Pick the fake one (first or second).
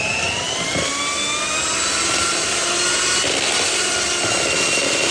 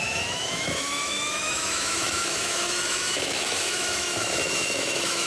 second